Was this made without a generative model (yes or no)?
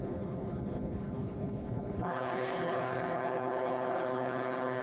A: no